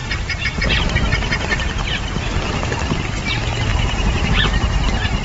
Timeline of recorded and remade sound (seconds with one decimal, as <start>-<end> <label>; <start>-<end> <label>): 0.0-1.1 recorded; 1.1-3.1 remade; 3.1-3.7 recorded; 3.7-4.4 remade; 4.4-5.2 recorded